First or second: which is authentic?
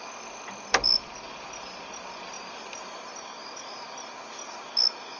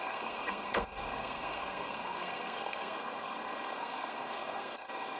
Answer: first